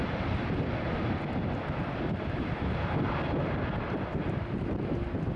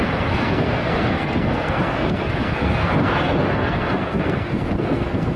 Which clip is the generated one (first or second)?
second